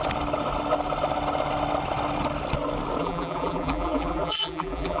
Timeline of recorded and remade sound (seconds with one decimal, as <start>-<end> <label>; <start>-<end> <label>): 0.0-3.0 recorded; 3.0-5.0 remade